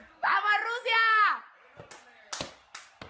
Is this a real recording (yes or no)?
yes